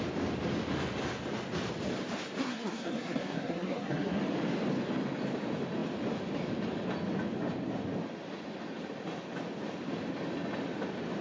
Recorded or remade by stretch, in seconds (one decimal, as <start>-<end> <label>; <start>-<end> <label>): 0.0-2.4 recorded; 2.4-4.2 remade; 4.2-11.2 recorded